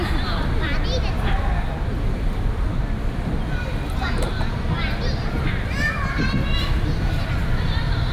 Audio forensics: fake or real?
real